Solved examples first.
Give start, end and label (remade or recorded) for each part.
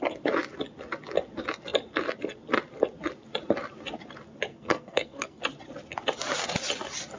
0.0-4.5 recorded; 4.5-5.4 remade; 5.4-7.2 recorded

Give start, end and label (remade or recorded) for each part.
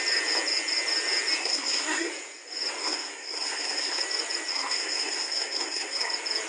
0.0-1.4 recorded; 1.4-2.1 remade; 2.1-2.8 recorded; 2.8-4.0 remade; 4.0-4.5 recorded; 4.5-6.1 remade; 6.1-6.5 recorded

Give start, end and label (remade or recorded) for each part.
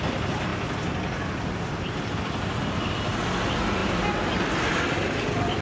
0.0-5.6 recorded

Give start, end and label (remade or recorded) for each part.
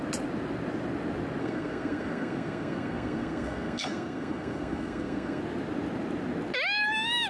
0.0-1.4 recorded; 1.4-5.4 remade; 5.4-7.3 recorded